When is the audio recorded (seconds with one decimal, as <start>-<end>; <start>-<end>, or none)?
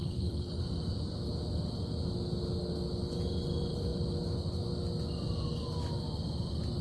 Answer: 0.6-6.8